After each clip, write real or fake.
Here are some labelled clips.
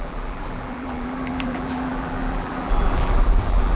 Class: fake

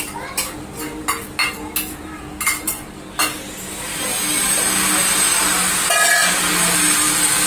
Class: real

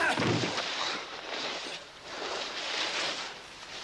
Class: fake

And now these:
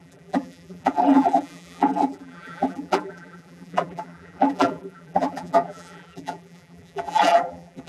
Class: fake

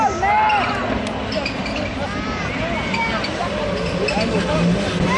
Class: real